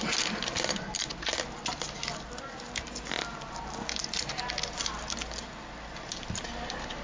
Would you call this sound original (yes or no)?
yes